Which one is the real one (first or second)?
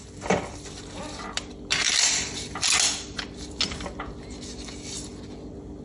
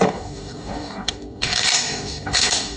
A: first